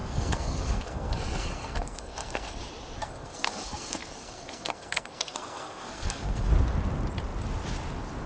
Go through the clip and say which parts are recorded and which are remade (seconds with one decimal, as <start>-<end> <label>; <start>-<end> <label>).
0.0-2.6 remade; 2.6-3.0 recorded; 3.0-6.5 remade; 6.5-8.3 recorded